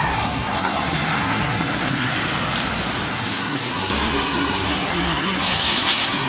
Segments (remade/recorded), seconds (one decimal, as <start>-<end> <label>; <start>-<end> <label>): 0.0-2.1 remade; 2.1-3.1 recorded; 3.1-6.3 remade